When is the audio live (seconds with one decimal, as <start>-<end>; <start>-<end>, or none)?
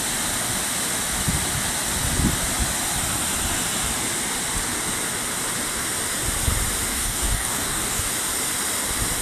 0.0-6.9; 8.1-9.2